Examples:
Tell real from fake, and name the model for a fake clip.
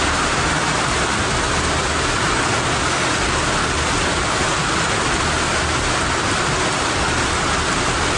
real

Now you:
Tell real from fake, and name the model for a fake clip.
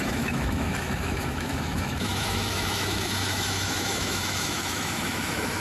fake, autoencoder, DAC-VAE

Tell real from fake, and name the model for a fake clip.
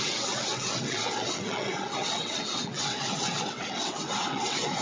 fake, vocoder, WaveNeXt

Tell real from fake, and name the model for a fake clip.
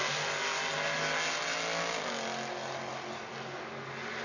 real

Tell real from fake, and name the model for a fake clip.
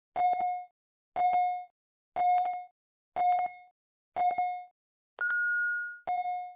real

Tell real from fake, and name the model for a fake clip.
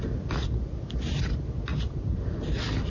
real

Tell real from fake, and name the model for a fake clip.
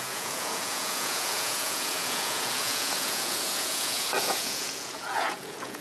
fake, vocoder, Vocos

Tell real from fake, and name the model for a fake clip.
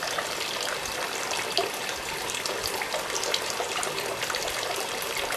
real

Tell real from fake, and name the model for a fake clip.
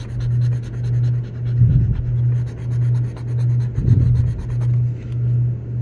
real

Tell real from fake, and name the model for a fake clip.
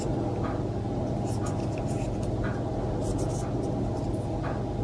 real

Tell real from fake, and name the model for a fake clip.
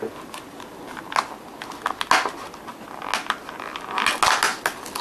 real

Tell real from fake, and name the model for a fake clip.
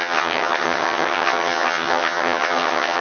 fake, vocoder, HiFi-GAN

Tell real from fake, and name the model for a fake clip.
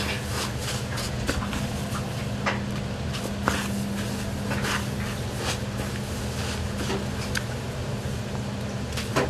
real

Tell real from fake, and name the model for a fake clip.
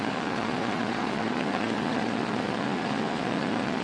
fake, vocoder, Vocos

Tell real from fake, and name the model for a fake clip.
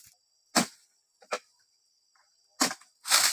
real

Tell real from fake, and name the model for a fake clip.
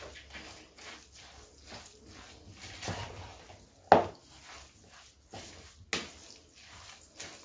real